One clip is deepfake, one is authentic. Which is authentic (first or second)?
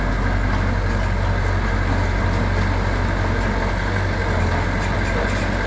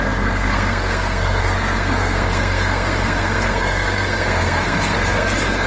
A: first